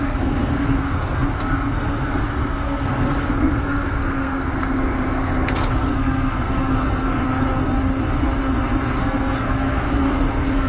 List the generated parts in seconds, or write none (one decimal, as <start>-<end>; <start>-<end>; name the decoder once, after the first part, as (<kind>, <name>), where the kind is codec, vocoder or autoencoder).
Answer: 0.0-7.2 (codec, SNAC); 9.0-10.7